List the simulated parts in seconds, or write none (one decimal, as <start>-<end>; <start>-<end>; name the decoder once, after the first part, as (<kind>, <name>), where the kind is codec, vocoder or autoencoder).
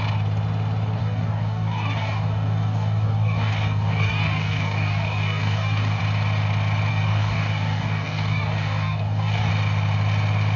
1.0-6.0 (codec, DAC); 6.9-9.5